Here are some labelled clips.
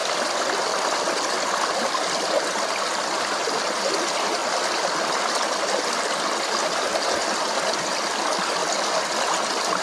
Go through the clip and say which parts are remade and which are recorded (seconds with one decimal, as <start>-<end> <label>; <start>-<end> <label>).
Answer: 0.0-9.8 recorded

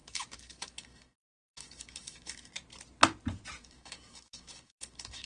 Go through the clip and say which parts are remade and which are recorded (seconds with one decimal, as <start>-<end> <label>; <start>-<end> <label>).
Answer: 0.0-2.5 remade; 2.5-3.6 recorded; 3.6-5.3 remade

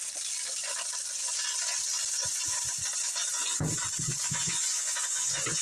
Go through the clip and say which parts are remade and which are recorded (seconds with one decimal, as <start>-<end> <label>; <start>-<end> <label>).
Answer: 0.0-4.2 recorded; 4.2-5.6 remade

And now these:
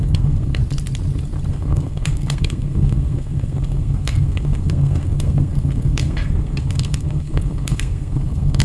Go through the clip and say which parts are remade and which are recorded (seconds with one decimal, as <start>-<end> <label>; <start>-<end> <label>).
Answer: 0.0-0.6 remade; 0.6-1.5 recorded; 1.5-8.6 remade

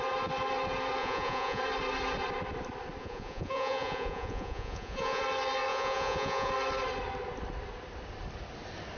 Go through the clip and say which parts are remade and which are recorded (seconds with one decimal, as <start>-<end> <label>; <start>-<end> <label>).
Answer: 0.0-1.0 recorded; 1.0-1.6 remade; 1.6-3.0 recorded; 3.0-5.2 remade; 5.2-5.7 recorded; 5.7-6.5 remade; 6.5-9.0 recorded

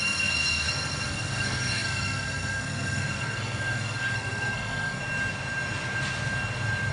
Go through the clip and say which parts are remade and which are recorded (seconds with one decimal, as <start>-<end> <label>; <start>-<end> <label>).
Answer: 0.0-5.0 remade; 5.0-6.9 recorded

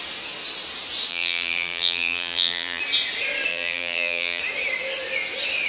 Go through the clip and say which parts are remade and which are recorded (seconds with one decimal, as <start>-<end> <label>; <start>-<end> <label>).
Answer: 0.0-1.1 recorded; 1.1-2.8 remade; 2.8-3.5 recorded; 3.5-4.4 remade; 4.4-5.7 recorded

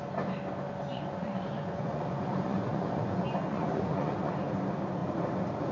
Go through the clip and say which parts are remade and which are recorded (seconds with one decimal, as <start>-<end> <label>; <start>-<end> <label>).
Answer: 0.0-0.9 recorded; 0.9-4.3 remade; 4.3-5.7 recorded